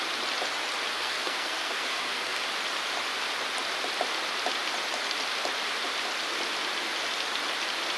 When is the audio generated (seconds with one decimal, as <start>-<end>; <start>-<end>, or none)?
0.9-2.4